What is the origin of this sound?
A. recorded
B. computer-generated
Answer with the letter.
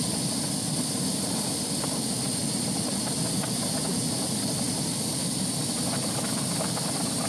A